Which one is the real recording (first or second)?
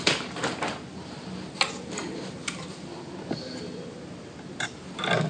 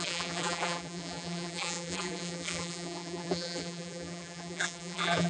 first